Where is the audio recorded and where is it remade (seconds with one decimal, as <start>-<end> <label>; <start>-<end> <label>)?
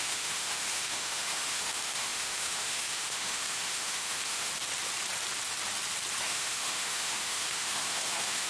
0.0-4.5 remade; 4.5-6.2 recorded; 6.2-8.5 remade